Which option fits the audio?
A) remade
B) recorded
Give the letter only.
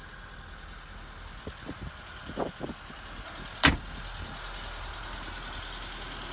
B